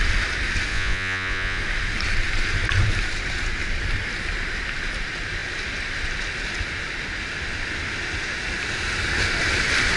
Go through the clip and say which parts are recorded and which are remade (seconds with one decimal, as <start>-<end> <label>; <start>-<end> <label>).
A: 0.0-0.7 recorded; 0.7-1.6 remade; 1.6-10.0 recorded